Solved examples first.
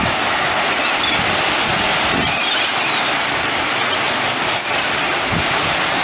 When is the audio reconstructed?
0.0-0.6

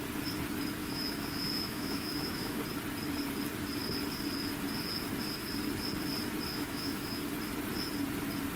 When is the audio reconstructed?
0.8-2.6; 6.5-7.2

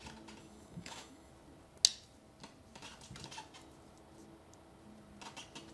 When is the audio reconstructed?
0.4-1.3

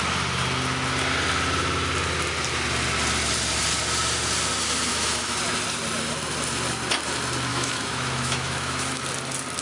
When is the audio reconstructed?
4.9-5.4; 7.5-9.0